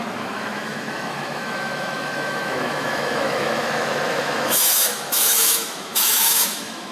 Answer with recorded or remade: remade